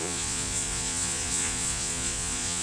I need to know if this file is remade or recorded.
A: remade